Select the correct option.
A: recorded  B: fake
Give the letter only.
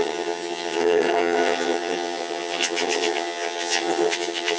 B